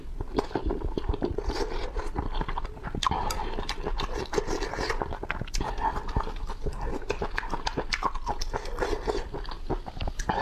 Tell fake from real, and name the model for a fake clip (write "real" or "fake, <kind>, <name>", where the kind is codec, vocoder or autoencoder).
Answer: real